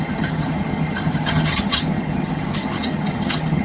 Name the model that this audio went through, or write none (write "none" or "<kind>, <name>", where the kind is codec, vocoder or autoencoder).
vocoder, HiFi-GAN